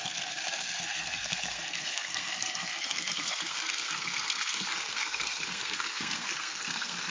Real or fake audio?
fake